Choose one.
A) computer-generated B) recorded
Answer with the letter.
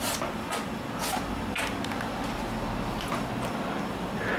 B